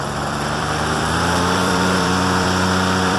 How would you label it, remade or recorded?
remade